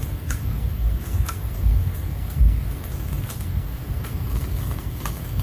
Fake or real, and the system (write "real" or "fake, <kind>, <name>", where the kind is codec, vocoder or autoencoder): fake, codec, SNAC